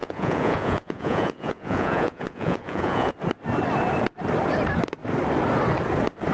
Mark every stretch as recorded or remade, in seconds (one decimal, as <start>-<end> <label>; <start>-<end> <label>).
0.0-3.1 remade; 3.1-6.3 recorded